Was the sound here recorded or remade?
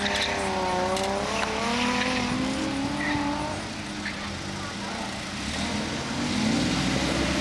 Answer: recorded